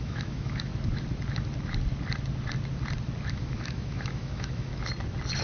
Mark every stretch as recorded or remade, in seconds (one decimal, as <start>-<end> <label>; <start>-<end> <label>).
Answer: 0.0-0.7 remade; 0.7-3.3 recorded; 3.3-4.7 remade; 4.7-5.4 recorded

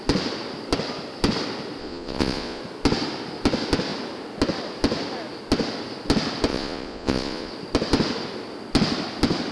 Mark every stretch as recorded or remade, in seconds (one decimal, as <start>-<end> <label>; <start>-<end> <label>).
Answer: 0.0-1.8 recorded; 1.8-2.6 remade; 2.6-6.5 recorded; 6.5-7.5 remade; 7.5-9.5 recorded

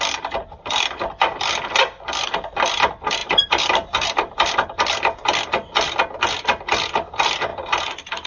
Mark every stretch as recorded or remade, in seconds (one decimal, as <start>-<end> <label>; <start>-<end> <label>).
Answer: 0.0-3.2 recorded; 3.2-4.5 remade; 4.5-8.3 recorded

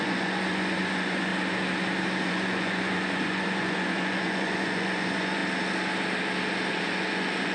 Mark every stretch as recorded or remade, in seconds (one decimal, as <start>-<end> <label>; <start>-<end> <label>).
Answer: 0.0-1.3 remade; 1.3-2.3 recorded; 2.3-5.4 remade; 5.4-6.7 recorded; 6.7-7.5 remade

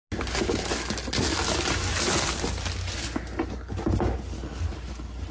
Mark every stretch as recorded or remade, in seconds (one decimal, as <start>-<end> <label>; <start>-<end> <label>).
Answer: 0.0-5.3 recorded

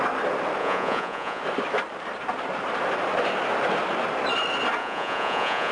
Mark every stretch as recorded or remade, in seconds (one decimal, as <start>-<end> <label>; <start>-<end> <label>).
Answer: 0.0-0.6 recorded; 0.6-1.4 remade; 1.4-4.8 recorded; 4.8-5.7 remade

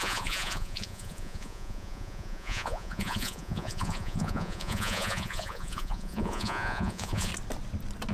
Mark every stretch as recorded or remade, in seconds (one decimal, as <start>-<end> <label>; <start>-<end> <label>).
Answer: 0.0-7.3 remade; 7.3-8.1 recorded

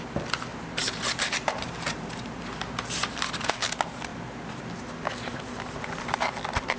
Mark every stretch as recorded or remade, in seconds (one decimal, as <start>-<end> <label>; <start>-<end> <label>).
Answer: 0.0-0.5 recorded; 0.5-3.5 remade; 3.5-6.8 recorded